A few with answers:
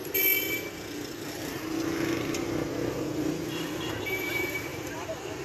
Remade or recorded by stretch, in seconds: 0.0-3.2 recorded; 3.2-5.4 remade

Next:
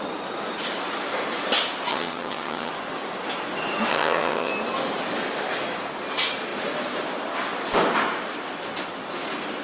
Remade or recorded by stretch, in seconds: 0.0-1.9 recorded; 1.9-2.7 remade; 2.7-3.9 recorded; 3.9-4.5 remade; 4.5-9.6 recorded

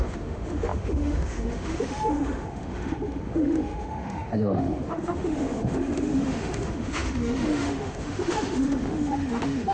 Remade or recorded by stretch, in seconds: 0.0-9.7 remade